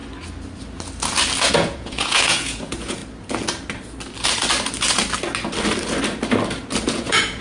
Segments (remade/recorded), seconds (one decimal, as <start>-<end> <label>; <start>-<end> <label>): 0.0-1.5 recorded; 1.5-3.0 remade; 3.0-6.9 recorded; 6.9-7.4 remade